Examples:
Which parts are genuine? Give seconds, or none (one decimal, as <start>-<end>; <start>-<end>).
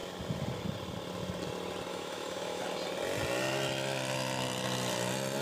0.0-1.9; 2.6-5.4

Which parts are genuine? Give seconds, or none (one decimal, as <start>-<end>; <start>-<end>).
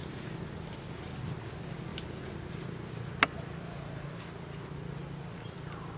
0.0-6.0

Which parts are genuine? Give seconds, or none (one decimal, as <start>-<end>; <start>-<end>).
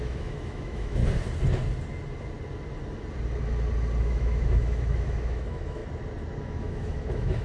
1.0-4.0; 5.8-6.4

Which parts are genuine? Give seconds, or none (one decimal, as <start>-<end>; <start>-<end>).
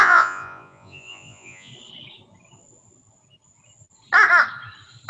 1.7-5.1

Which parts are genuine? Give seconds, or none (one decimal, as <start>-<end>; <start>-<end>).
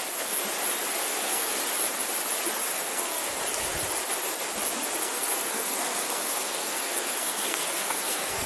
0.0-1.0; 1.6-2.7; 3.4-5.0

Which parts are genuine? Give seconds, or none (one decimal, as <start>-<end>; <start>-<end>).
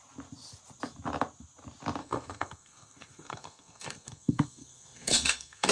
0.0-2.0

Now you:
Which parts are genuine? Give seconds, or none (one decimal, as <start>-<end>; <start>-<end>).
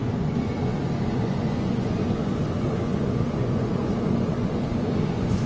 none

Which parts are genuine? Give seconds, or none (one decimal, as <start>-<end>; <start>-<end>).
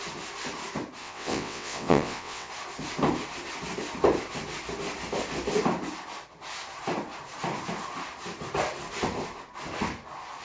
0.0-1.0; 2.5-10.4